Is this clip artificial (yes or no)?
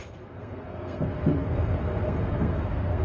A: yes